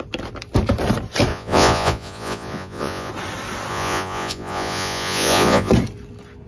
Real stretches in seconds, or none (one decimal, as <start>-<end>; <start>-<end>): 0.0-1.3; 3.1-3.7; 5.7-6.5